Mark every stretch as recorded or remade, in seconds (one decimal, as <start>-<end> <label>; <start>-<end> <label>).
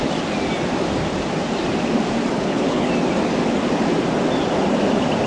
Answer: 0.0-2.3 recorded; 2.3-2.9 remade; 2.9-5.3 recorded